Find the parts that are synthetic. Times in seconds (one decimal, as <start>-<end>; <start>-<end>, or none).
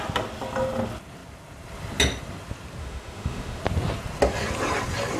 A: 2.8-3.6